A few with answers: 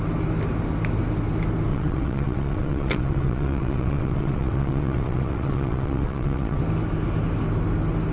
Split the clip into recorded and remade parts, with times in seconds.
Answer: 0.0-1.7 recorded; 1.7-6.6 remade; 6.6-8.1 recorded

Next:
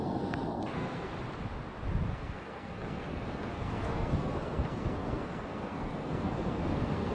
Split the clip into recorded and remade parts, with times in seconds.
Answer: 0.0-1.1 remade; 1.1-2.1 recorded; 2.1-7.1 remade